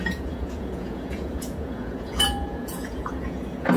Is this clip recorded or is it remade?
remade